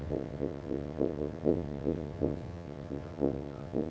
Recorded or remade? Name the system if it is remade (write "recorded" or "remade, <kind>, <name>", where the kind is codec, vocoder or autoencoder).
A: remade, vocoder, WaveNeXt